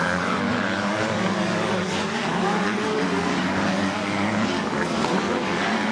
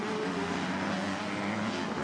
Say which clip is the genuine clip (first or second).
second